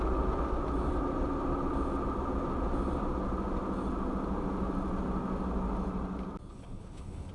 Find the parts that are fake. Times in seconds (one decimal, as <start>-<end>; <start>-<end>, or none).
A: 6.5-7.3